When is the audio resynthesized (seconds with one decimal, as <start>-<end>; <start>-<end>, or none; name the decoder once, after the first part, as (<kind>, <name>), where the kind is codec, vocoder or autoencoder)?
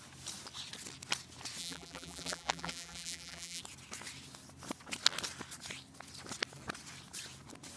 1.6-3.6 (vocoder, BigVGAN v2)